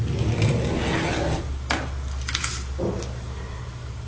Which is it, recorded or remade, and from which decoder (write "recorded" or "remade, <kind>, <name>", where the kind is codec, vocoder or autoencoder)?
recorded